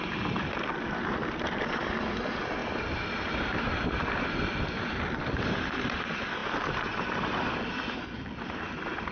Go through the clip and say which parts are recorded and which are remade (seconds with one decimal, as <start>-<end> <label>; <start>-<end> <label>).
0.0-9.1 recorded